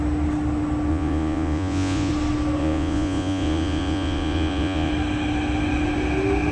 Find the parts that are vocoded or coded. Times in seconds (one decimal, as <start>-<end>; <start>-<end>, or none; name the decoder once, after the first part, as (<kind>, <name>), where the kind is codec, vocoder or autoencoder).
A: 0.9-2.1 (vocoder, Vocos); 2.6-4.9